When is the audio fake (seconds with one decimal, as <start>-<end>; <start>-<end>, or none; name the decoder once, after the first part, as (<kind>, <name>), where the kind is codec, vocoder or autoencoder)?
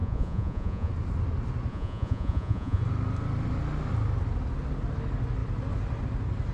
0.0-0.9 (vocoder, Vocos); 1.7-2.8